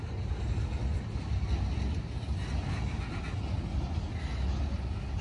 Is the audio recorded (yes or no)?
yes